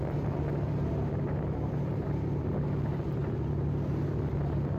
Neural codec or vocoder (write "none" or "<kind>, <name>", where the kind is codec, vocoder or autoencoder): none